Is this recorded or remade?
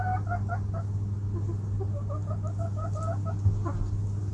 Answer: recorded